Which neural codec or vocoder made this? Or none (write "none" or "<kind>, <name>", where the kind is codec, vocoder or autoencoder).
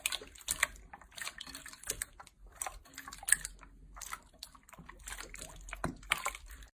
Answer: none